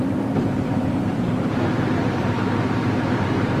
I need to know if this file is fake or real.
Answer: fake